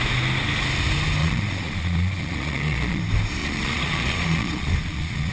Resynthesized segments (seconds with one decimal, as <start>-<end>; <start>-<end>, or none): 1.2-3.0; 3.4-5.3